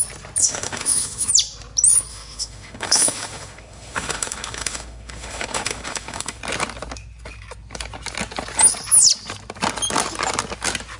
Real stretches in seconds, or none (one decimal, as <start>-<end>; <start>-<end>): 0.0-0.4; 1.3-2.1; 6.4-11.0